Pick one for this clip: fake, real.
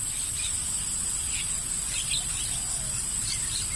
real